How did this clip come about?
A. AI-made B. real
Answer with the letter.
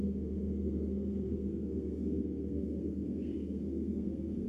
A